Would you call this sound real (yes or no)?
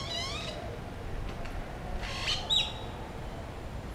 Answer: yes